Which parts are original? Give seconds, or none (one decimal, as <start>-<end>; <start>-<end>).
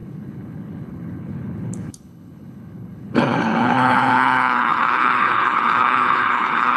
none